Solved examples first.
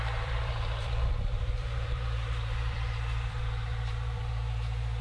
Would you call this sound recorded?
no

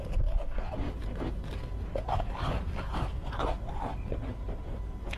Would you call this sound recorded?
yes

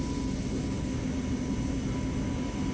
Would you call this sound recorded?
yes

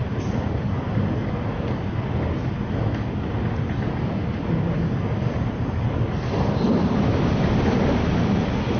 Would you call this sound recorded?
yes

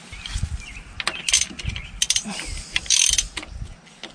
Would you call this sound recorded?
yes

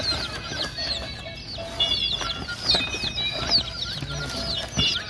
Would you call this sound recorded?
yes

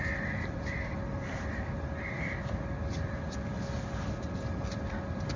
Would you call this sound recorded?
no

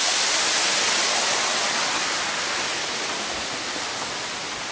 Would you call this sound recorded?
yes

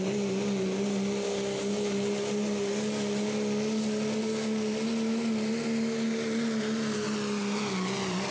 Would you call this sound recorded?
yes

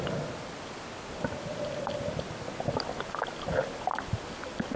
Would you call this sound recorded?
yes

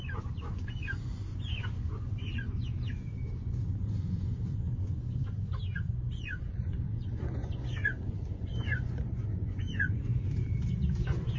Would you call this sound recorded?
no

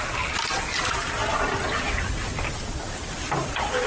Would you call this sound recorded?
yes